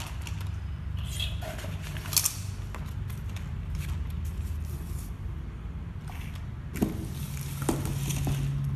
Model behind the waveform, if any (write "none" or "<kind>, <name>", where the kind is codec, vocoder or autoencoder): none